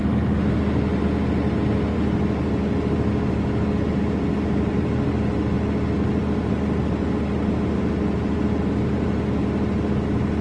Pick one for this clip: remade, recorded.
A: recorded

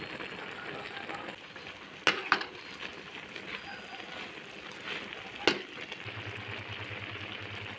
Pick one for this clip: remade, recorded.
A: recorded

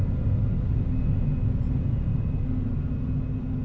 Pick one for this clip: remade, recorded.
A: recorded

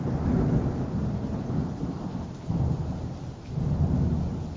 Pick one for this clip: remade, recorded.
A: recorded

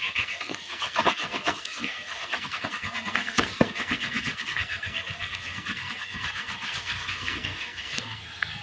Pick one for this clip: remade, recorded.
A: remade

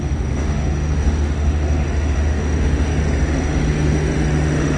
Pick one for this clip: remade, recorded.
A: remade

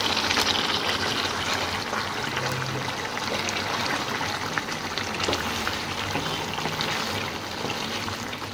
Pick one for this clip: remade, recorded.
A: recorded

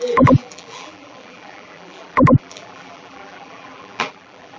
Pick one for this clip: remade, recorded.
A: remade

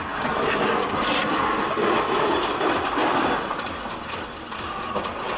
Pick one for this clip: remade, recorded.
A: recorded